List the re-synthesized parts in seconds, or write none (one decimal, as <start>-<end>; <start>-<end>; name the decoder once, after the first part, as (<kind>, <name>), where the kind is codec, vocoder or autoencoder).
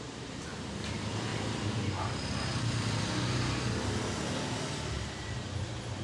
0.0-1.3 (vocoder, BigVGAN v2); 4.9-6.0